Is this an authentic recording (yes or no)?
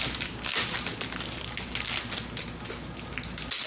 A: yes